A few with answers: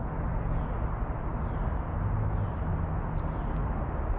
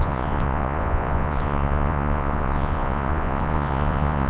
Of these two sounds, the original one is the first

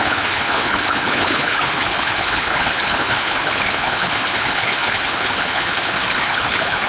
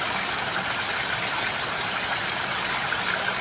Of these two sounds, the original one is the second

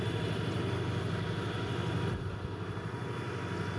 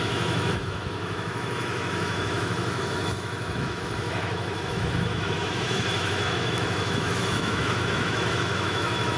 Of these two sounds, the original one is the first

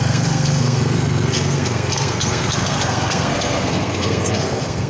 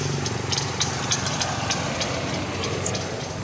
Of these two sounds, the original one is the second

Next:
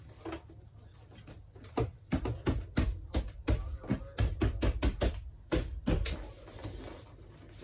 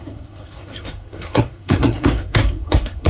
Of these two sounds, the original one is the first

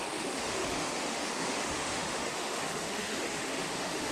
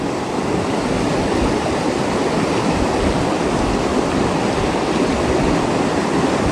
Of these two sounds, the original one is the second